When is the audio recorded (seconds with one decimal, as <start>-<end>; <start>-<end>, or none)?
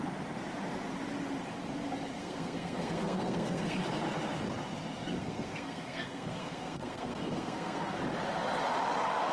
0.0-2.2; 3.8-5.2; 8.0-9.3